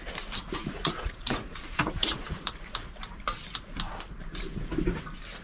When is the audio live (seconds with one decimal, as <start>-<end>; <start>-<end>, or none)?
0.0-0.6; 2.5-5.4